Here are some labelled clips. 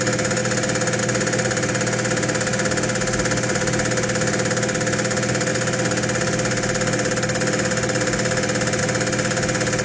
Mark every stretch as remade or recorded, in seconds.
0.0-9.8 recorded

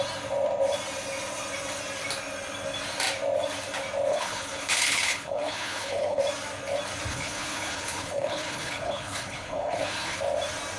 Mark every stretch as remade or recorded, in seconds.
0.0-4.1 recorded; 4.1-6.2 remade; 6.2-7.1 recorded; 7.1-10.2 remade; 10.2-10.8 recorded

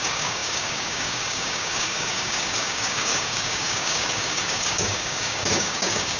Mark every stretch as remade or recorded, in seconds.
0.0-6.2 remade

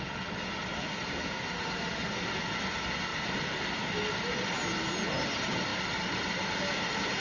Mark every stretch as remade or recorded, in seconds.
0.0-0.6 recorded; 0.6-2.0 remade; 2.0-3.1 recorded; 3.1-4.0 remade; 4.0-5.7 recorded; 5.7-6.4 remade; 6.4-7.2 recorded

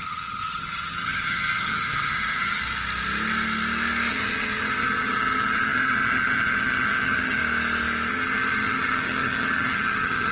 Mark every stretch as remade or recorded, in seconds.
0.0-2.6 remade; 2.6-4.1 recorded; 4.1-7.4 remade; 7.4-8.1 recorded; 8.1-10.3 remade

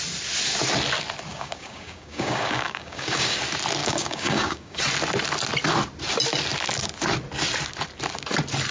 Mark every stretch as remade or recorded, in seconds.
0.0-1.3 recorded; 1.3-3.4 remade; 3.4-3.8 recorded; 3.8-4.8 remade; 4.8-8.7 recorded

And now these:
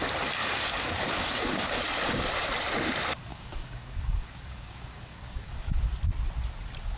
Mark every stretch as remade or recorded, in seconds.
0.0-0.4 recorded; 0.4-1.8 remade; 1.8-3.3 recorded; 3.3-5.8 remade; 5.8-7.0 recorded